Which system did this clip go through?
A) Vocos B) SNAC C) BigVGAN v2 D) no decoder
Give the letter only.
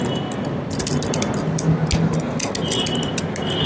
D